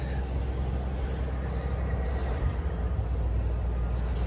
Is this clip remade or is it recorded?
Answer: recorded